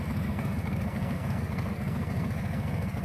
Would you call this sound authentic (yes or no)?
no